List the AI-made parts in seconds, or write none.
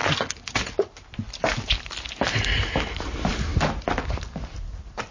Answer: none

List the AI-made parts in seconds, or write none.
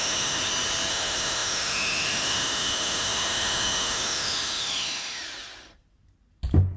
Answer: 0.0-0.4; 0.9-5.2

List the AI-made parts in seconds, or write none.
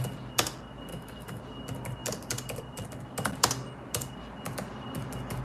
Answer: 0.9-1.4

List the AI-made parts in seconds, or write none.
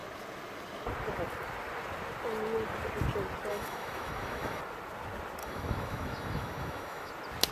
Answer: 3.5-4.6; 5.4-7.1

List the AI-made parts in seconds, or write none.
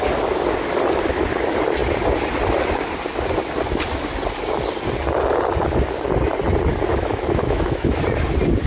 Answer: 6.9-8.0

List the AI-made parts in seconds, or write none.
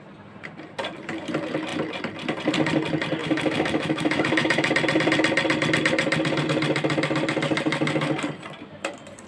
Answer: 3.2-4.7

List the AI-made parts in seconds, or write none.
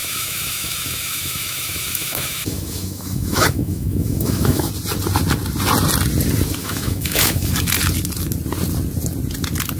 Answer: 0.0-4.7; 6.6-7.5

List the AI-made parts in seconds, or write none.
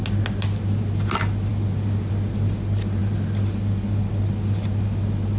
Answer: none